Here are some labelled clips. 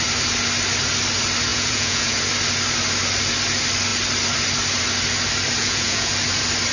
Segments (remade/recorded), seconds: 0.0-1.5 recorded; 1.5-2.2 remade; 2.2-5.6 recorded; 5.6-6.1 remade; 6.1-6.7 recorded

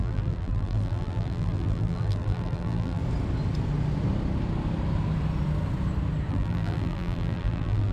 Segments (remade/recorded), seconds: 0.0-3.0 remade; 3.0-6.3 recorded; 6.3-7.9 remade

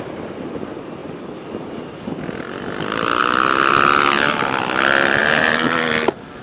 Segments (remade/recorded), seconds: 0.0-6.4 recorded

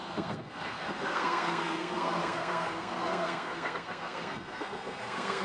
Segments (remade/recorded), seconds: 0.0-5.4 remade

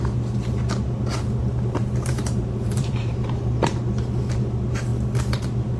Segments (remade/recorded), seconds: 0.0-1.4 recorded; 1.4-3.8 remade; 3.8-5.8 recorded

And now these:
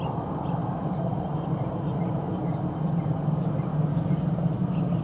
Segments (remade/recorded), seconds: 0.0-0.6 recorded; 0.6-3.0 remade; 3.0-5.0 recorded

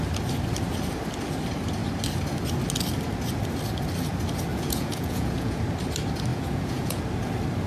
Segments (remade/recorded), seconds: 0.0-4.5 recorded; 4.5-5.6 remade; 5.6-6.3 recorded; 6.3-7.0 remade; 7.0-7.7 recorded